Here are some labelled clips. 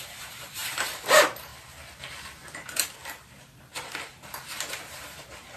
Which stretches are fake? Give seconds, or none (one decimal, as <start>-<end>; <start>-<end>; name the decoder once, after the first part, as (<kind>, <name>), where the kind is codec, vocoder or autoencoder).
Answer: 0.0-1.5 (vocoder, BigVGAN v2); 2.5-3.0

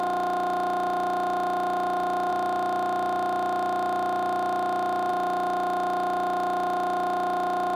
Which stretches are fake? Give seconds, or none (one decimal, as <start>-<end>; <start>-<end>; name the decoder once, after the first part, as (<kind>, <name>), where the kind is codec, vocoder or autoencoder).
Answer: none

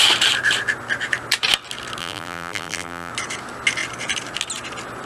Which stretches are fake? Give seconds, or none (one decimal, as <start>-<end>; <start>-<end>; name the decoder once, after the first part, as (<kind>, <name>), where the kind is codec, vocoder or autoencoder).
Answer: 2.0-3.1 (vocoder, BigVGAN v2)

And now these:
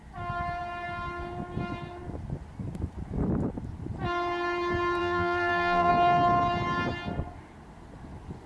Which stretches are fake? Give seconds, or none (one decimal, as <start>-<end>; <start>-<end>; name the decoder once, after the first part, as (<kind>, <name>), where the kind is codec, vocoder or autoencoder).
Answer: 5.0-5.9 (vocoder, BigVGAN v2)